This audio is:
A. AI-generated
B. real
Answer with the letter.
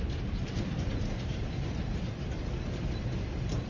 B